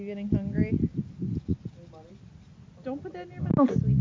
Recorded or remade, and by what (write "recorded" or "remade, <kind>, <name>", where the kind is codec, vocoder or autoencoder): recorded